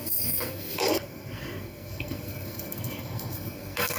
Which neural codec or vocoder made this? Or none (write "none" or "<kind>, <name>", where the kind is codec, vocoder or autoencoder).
codec, SNAC